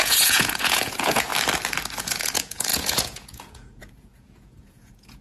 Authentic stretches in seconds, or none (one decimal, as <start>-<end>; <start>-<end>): 1.3-2.0